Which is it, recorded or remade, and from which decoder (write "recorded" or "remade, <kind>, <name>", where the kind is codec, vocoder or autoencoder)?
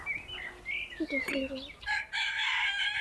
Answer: recorded